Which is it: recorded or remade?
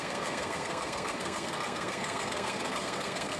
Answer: remade